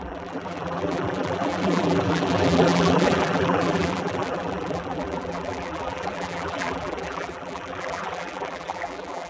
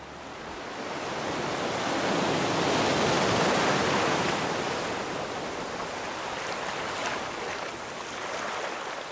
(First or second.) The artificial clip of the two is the first